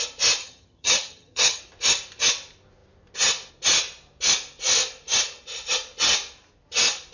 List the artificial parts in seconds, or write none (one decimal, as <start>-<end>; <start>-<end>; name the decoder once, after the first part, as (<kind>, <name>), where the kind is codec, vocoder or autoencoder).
0.4-1.6 (vocoder, HiFi-GAN)